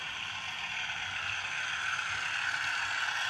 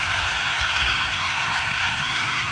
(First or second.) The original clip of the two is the first